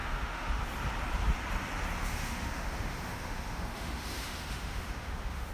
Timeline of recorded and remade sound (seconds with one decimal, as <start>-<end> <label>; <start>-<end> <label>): 0.0-0.6 remade; 0.6-2.0 recorded; 2.0-5.5 remade